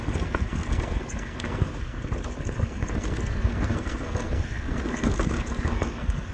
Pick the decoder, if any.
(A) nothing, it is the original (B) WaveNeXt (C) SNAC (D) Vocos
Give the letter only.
C